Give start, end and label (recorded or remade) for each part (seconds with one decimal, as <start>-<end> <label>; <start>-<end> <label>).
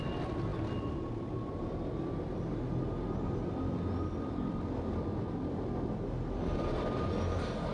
0.0-7.7 recorded